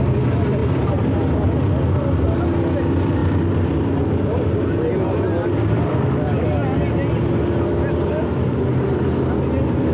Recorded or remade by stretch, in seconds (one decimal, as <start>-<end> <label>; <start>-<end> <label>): 0.0-0.6 recorded; 0.6-1.2 remade; 1.2-9.9 recorded